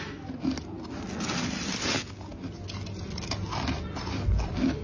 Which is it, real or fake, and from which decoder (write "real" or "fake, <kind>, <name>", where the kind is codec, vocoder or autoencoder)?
real